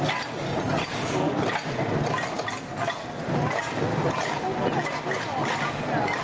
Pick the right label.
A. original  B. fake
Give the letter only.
A